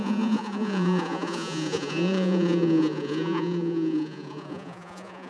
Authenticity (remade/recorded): remade